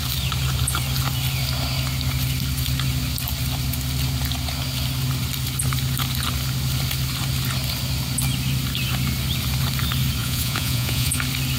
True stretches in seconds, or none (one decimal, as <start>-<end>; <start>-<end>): 0.0-10.2; 11.2-11.6